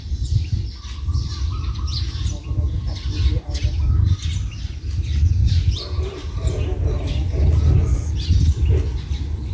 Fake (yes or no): no